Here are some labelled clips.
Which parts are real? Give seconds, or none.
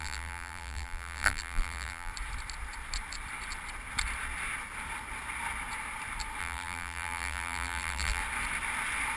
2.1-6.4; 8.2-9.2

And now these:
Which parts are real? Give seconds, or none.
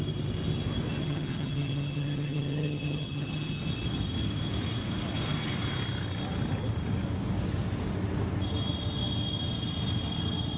0.0-1.0; 3.6-10.6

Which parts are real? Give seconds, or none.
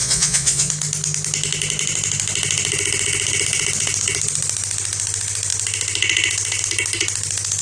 0.7-7.6